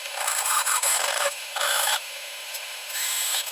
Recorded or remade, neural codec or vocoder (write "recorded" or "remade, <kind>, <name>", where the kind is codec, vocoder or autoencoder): remade, autoencoder, DAC-VAE